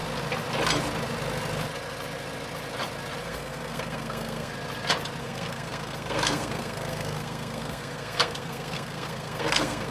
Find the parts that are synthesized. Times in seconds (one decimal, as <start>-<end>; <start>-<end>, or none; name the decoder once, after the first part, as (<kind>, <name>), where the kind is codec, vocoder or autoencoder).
3.2-4.5 (codec, SNAC); 5.2-9.9